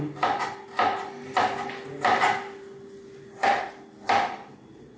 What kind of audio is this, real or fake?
real